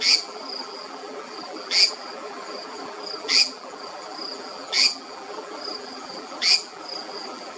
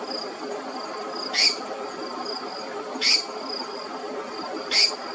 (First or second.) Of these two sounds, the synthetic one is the first